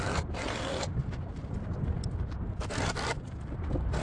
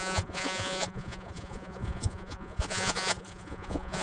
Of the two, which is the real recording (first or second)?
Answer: first